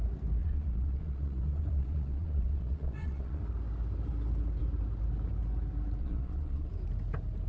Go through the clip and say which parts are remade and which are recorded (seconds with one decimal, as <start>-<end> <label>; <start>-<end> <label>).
0.0-0.4 recorded; 0.4-3.4 remade; 3.4-6.0 recorded; 6.0-6.7 remade; 6.7-7.5 recorded